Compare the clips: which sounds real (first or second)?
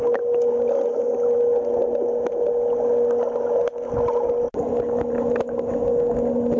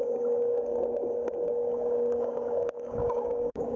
first